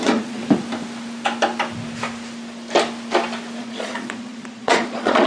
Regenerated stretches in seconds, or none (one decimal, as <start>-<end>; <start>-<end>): 0.0-0.4; 3.6-5.3